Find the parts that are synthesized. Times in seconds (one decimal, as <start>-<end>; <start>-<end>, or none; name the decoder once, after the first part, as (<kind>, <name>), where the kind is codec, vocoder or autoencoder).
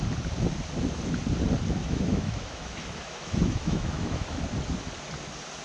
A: 1.8-4.4 (autoencoder, DAC-VAE)